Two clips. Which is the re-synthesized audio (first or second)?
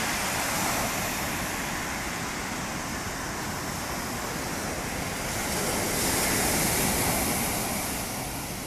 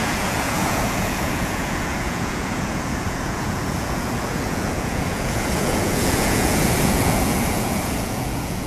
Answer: second